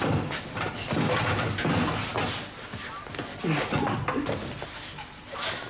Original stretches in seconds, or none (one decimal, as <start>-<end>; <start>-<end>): 0.0-5.7